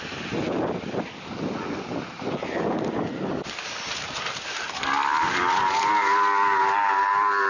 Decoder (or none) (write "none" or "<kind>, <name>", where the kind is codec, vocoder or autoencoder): none